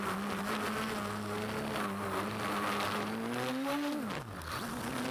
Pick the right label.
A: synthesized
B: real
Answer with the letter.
B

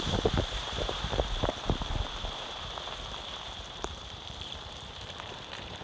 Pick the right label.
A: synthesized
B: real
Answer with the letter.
A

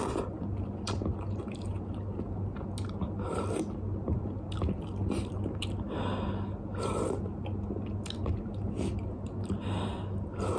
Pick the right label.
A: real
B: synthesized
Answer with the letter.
A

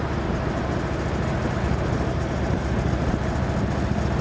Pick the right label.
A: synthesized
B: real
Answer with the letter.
A